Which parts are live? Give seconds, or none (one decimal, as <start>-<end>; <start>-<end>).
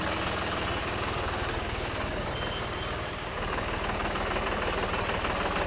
0.0-0.8; 4.2-5.7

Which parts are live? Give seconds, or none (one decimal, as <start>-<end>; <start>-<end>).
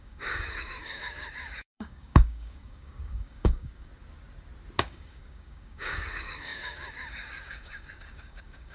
3.9-4.8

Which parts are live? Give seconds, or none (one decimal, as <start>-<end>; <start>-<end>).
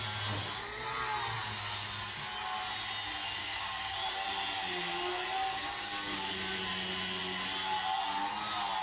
0.0-3.4; 4.1-5.5; 6.3-8.8